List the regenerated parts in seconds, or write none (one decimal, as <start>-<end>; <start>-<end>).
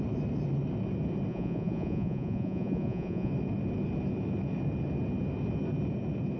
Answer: 1.3-3.3